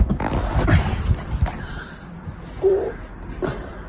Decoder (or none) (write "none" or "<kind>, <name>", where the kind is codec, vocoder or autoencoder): vocoder, BigVGAN v2